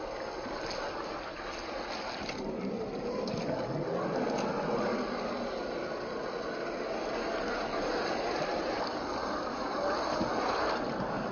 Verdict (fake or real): real